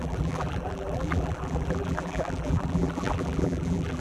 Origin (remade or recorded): remade